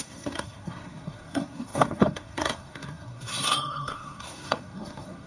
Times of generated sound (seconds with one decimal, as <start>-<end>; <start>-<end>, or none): 0.0-5.3